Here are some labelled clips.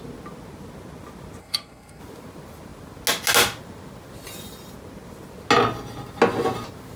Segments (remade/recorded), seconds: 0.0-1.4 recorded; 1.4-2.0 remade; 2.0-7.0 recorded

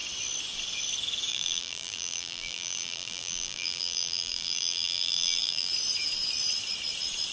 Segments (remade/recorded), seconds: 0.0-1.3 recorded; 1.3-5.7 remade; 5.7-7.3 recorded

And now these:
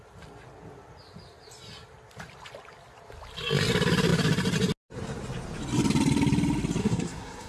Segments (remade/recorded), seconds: 0.0-6.8 recorded; 6.8-7.5 remade

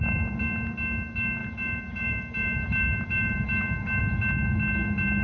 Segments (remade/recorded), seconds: 0.0-1.4 recorded; 1.4-4.0 remade; 4.0-5.2 recorded

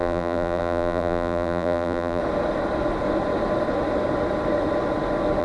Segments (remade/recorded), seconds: 0.0-2.2 remade; 2.2-5.4 recorded